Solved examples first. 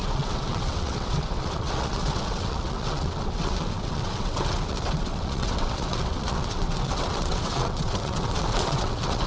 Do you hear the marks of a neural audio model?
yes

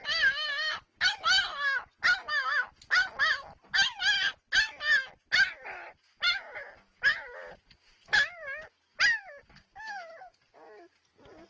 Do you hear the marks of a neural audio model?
no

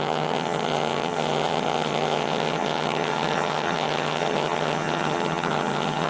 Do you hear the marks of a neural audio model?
yes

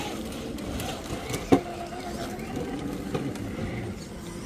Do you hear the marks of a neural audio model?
no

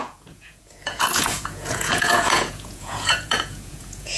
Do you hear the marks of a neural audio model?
yes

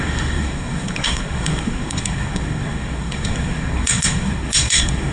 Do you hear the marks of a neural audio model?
yes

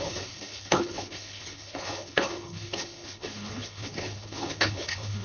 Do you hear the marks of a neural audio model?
yes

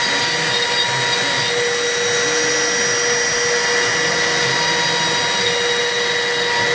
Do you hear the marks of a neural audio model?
no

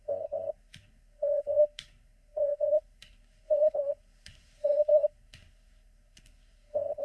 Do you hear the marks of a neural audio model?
yes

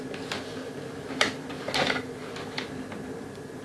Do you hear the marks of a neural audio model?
no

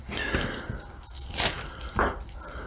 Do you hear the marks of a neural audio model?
no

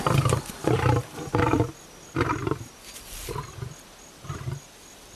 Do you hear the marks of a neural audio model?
no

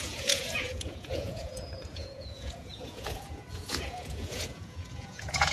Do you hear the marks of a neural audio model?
yes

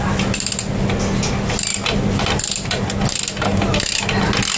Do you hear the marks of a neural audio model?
no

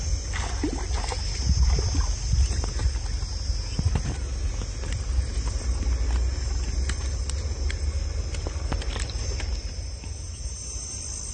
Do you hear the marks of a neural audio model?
no